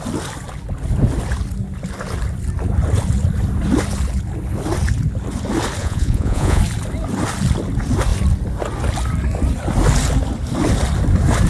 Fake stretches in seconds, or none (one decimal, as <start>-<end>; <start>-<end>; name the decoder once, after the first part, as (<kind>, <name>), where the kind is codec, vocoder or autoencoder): 5.8-6.6 (vocoder, Vocos)